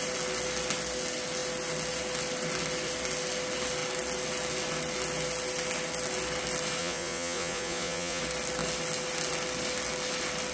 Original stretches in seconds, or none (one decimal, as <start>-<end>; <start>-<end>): 0.0-6.8; 8.2-10.5